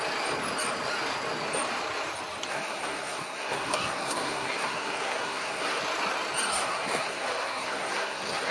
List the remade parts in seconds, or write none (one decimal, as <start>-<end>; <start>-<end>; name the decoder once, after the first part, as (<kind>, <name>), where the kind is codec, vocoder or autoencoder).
2.5-5.8 (codec, SNAC); 6.5-8.5